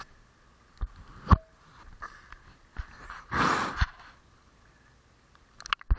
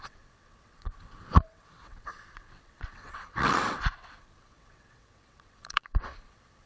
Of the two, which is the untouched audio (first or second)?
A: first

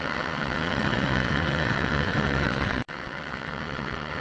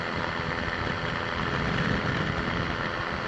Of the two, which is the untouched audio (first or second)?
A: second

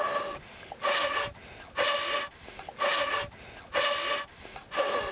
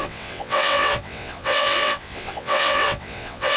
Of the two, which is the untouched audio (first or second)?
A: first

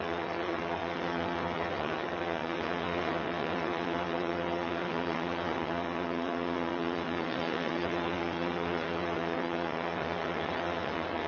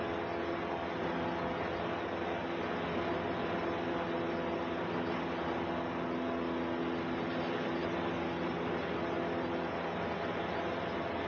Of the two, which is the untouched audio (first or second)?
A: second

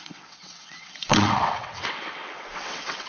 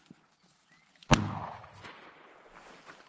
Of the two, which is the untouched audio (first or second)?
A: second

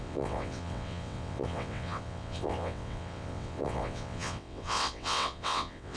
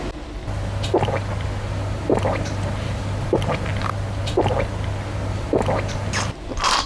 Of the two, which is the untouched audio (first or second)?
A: second